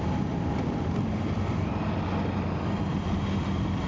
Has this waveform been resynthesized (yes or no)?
no